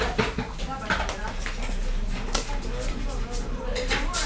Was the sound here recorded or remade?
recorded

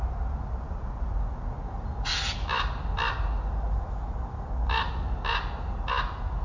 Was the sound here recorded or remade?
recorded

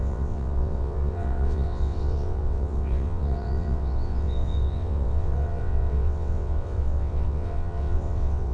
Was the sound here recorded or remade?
remade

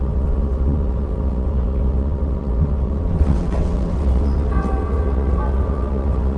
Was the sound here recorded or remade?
remade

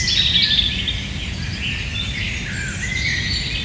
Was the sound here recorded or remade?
recorded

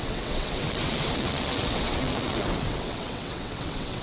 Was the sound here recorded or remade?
remade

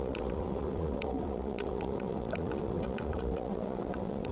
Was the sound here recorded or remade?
remade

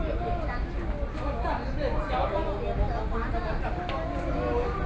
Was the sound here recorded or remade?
recorded